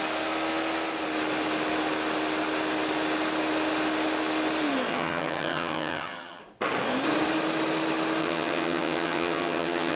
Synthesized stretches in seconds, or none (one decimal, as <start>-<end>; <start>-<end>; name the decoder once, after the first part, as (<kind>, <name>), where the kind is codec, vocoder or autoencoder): 4.9-6.4 (vocoder, HiFi-GAN); 8.2-10.0